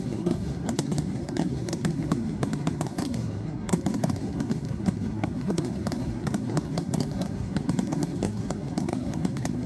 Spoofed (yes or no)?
yes